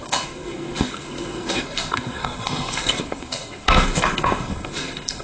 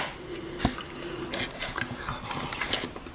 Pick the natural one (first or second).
second